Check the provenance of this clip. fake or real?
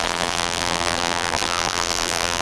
fake